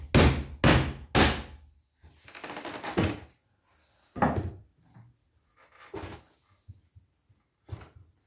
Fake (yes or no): no